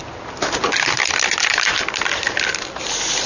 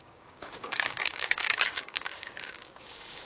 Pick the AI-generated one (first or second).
second